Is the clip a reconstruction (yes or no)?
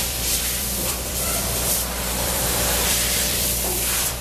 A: yes